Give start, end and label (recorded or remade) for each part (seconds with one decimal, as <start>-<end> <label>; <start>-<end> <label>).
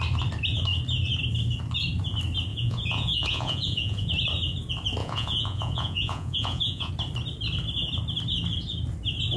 0.0-2.5 recorded; 2.5-4.1 remade; 4.1-5.0 recorded; 5.0-6.9 remade; 6.9-9.4 recorded